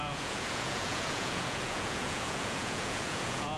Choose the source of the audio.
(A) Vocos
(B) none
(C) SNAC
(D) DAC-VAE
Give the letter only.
A